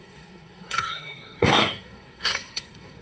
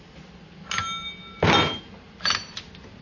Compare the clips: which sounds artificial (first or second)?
first